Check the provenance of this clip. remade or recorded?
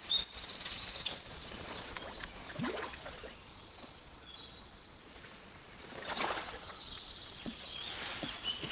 remade